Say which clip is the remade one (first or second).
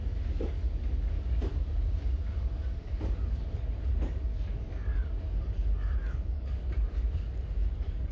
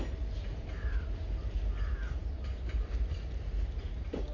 first